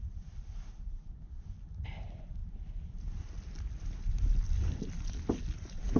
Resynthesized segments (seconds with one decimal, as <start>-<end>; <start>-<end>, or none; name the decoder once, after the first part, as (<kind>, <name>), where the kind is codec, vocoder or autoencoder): none